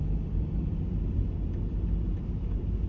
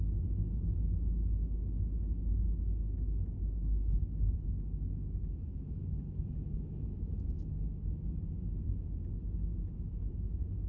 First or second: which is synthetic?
second